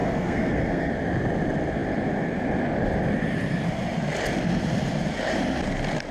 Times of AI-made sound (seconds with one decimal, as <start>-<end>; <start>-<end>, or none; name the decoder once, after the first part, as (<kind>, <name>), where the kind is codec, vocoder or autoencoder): 0.0-0.9 (codec, SNAC)